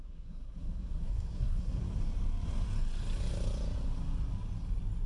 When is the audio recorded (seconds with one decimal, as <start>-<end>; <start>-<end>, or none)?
1.8-5.1